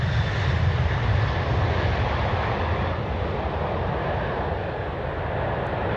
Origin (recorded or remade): recorded